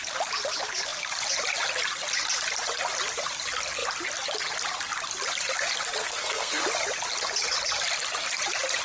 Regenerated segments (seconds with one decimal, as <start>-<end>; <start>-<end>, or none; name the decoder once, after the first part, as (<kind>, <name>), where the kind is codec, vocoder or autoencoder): 6.0-6.6 (codec, SNAC)